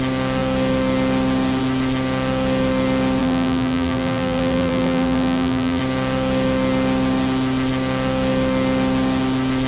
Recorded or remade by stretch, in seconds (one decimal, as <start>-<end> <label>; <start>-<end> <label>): 0.0-3.2 recorded; 3.2-5.8 remade; 5.8-9.7 recorded